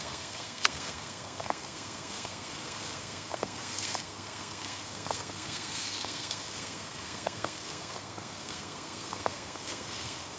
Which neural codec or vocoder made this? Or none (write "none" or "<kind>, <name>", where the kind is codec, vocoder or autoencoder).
codec, SNAC